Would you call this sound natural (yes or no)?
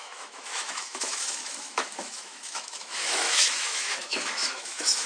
no